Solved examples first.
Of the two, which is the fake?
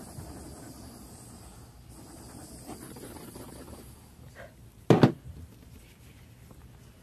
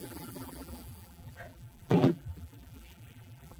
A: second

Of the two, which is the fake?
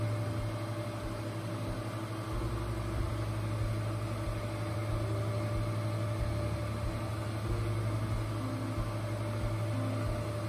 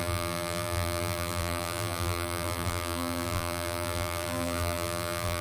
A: second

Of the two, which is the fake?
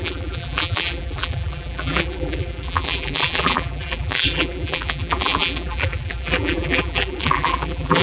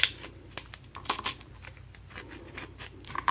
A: first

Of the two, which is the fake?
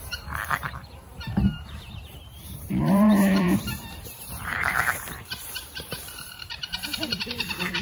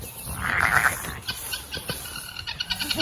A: first